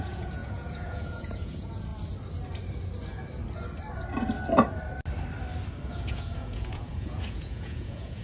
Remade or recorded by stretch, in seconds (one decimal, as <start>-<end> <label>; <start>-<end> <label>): 0.0-1.9 remade; 1.9-5.9 recorded; 5.9-8.2 remade